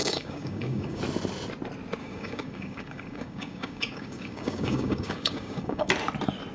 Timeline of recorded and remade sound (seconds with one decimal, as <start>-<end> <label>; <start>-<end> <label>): 0.0-1.0 remade; 1.0-2.0 recorded; 2.0-5.9 remade; 5.9-6.5 recorded